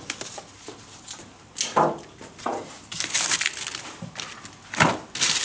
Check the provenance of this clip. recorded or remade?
recorded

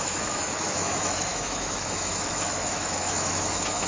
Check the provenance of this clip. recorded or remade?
remade